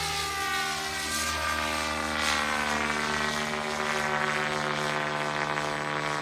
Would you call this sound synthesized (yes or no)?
no